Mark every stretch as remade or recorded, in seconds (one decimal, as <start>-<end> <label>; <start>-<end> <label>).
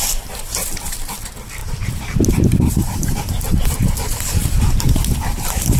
0.0-1.6 recorded; 1.6-4.9 remade; 4.9-5.8 recorded